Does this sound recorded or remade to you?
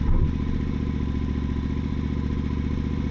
recorded